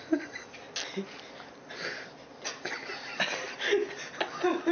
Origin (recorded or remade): recorded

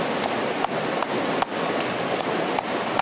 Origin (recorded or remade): recorded